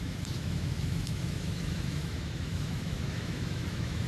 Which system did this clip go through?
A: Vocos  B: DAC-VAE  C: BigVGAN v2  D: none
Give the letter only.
B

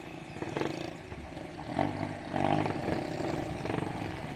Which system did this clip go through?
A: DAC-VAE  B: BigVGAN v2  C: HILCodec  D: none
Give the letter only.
D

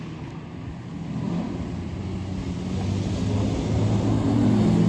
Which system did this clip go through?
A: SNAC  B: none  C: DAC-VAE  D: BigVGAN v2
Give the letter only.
B